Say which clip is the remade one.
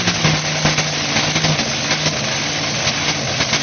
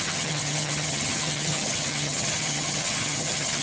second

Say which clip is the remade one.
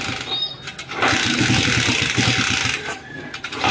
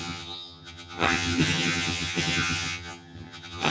second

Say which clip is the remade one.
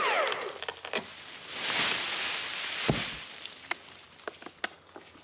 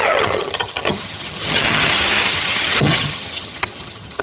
second